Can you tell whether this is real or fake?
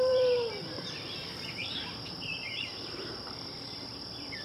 fake